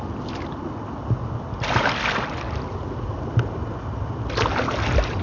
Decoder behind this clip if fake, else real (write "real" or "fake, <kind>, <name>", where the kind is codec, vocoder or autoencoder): real